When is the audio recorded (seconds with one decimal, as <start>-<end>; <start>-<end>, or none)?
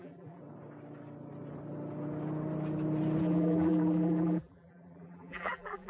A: 0.4-3.2